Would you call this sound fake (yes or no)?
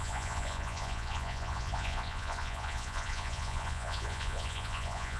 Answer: yes